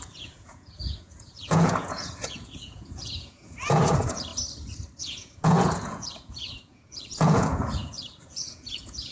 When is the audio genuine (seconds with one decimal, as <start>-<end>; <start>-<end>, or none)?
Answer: 4.3-5.0